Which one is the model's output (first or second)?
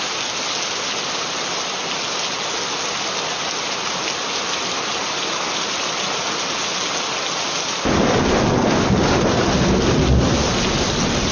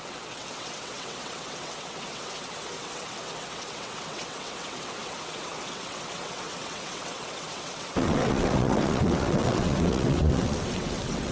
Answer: second